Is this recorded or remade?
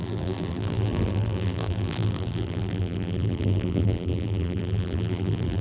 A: remade